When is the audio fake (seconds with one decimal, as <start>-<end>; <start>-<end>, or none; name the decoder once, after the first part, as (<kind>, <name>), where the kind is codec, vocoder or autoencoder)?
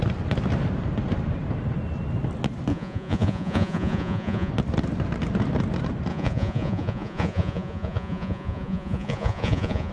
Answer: 2.7-4.5 (vocoder, Vocos); 6.1-9.9